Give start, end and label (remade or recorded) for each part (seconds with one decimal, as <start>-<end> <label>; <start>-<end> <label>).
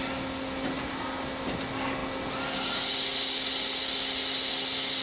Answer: 0.0-5.0 recorded